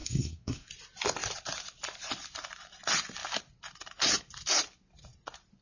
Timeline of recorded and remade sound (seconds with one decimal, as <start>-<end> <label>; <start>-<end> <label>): 0.0-0.7 remade; 0.7-5.6 recorded